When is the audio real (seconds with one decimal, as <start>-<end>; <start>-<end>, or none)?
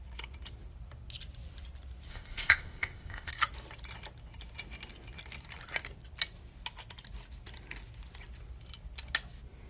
0.0-2.1; 3.3-9.7